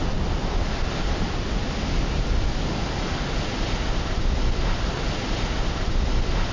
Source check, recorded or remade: recorded